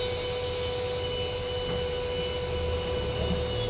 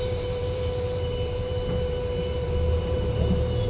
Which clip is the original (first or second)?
first